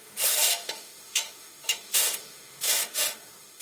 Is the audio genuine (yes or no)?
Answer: no